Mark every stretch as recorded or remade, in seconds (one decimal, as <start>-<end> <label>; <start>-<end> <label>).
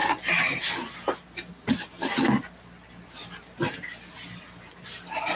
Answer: 0.0-5.4 recorded